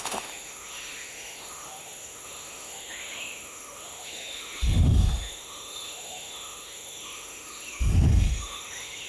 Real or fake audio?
fake